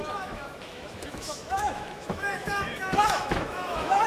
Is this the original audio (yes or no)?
no